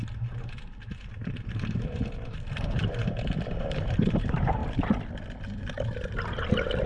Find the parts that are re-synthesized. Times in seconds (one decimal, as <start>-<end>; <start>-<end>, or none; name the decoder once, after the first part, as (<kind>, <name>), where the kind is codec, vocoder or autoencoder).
0.0-3.0 (vocoder, BigVGAN v2); 3.6-4.6; 6.5-6.9